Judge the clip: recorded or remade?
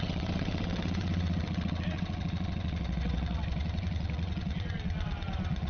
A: remade